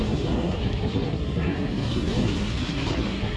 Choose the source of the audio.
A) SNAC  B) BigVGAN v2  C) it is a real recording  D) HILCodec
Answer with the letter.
A